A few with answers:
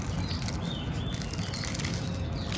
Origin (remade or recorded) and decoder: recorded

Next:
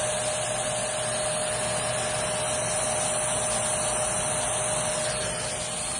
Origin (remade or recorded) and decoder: recorded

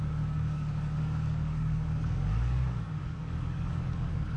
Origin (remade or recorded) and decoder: remade, codec, DAC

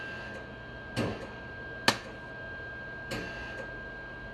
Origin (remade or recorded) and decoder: recorded